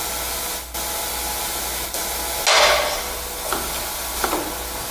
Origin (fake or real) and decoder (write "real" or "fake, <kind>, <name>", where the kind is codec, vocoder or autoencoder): real